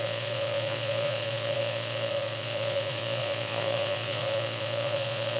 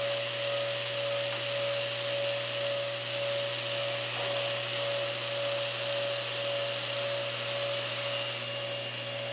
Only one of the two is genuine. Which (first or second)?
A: second